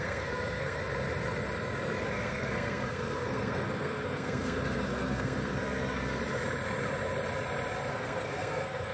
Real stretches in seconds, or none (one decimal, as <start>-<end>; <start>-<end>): 0.8-2.0; 6.2-7.9